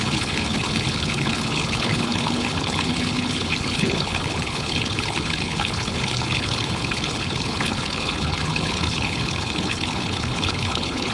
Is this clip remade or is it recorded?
remade